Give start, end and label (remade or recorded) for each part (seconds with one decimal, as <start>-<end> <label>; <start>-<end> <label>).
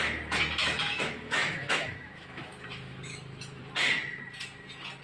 0.0-0.6 recorded; 0.6-3.6 remade; 3.6-5.0 recorded